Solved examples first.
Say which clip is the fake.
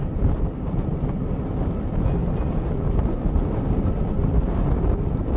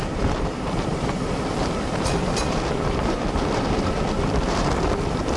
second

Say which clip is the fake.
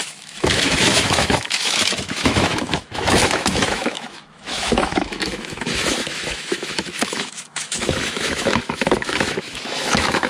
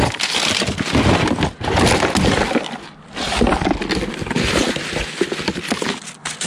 first